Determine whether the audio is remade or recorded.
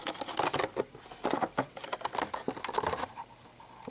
recorded